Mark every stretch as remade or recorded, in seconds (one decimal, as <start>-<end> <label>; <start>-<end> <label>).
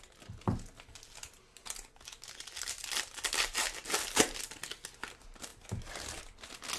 0.0-6.8 recorded